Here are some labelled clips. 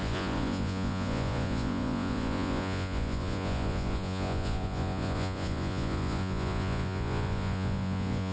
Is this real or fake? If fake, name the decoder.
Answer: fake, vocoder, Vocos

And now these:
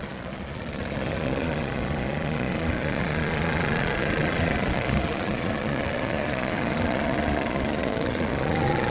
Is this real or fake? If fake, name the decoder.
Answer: fake, vocoder, Vocos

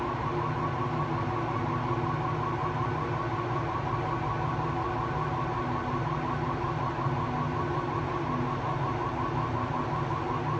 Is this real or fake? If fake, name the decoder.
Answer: real